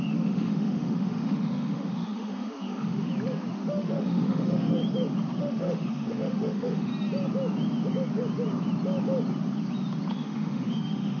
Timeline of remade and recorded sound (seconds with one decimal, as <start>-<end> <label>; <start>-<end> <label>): 0.0-3.1 remade; 3.1-3.7 recorded; 3.7-4.8 remade; 4.8-5.4 recorded; 5.4-6.9 remade; 6.9-10.1 recorded; 10.1-11.2 remade